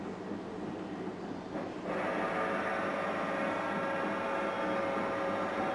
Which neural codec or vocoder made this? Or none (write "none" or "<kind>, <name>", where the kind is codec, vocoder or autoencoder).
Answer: none